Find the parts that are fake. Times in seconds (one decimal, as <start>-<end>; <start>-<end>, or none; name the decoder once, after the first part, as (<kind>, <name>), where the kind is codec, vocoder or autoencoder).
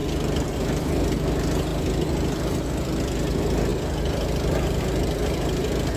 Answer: 3.7-4.8 (vocoder, BigVGAN v2)